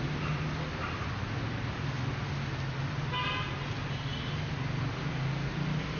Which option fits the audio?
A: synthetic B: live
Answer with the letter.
B